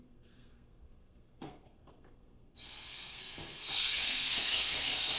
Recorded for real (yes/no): no